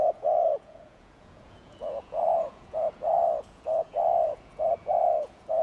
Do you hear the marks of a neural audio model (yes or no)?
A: yes